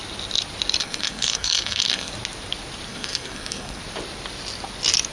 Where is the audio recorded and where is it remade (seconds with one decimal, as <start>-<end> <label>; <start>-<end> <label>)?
0.0-0.8 recorded; 0.8-2.1 remade; 2.1-2.9 recorded; 2.9-3.8 remade; 3.8-5.1 recorded